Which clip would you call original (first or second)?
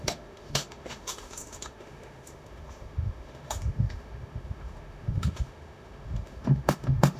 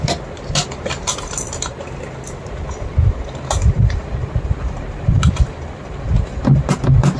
second